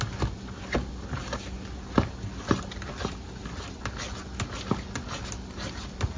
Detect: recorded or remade recorded